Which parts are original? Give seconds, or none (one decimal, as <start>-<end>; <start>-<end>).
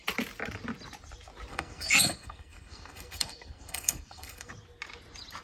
0.0-1.5; 4.5-5.4